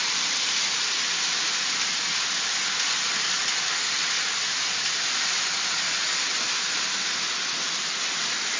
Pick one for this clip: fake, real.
real